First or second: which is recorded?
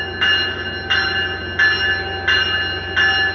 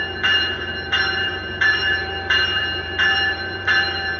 first